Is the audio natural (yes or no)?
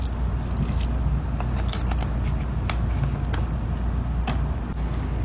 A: yes